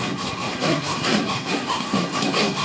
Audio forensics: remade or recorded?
remade